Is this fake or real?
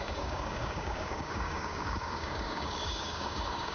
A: fake